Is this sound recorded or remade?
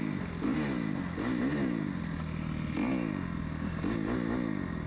recorded